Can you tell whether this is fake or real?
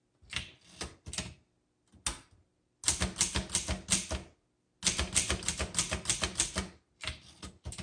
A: real